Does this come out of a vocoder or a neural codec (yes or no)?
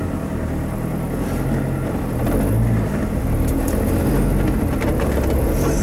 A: no